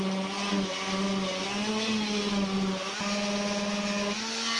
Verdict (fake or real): real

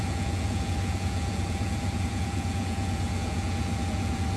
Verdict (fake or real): fake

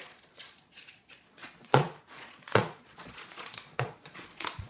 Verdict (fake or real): fake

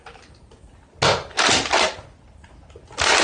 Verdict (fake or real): real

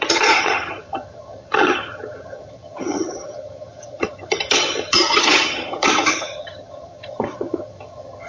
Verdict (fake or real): fake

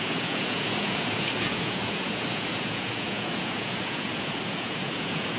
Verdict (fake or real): fake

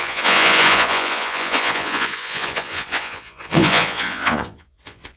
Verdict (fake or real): fake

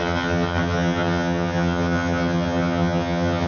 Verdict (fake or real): fake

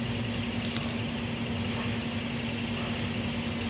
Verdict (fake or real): real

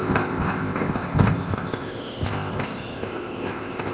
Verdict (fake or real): fake